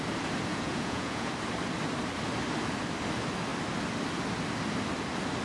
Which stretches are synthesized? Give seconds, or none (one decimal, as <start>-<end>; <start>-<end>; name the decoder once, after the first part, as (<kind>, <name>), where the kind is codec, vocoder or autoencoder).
0.5-1.3 (vocoder, Vocos)